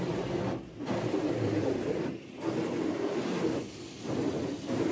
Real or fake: real